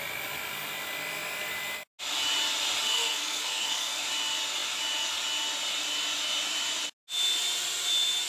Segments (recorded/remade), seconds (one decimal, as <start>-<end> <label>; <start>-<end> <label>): 0.0-2.9 recorded; 2.9-4.0 remade; 4.0-8.3 recorded